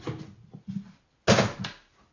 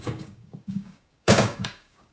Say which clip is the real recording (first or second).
first